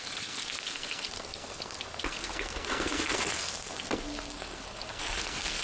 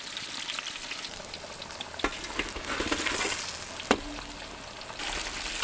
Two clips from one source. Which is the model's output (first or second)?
first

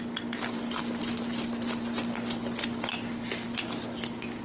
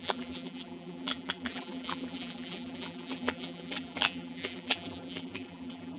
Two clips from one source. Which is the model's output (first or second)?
second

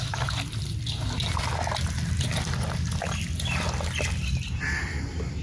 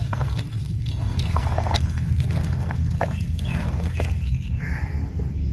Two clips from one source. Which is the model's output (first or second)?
second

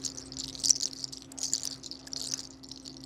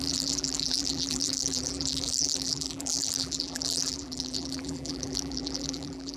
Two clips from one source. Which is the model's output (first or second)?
second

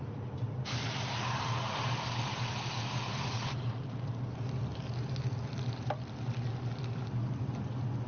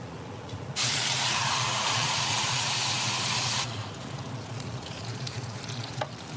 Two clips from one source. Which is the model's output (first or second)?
second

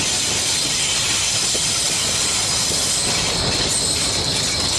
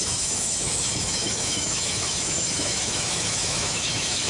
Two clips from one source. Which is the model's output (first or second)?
second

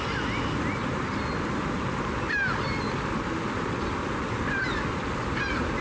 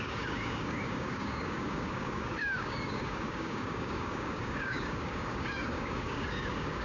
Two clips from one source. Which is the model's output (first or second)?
second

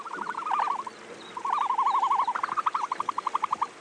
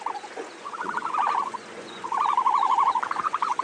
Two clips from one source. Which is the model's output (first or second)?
second